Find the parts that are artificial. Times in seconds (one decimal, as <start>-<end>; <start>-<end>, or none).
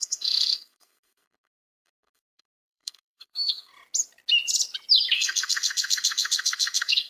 0.0-3.7; 5.1-7.1